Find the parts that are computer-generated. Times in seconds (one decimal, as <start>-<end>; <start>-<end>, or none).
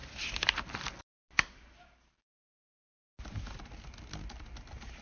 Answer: none